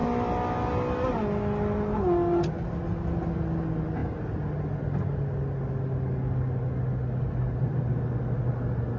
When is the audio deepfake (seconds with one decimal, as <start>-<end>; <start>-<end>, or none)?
none